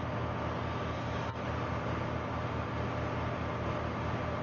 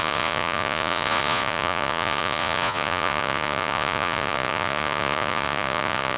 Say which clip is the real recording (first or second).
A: first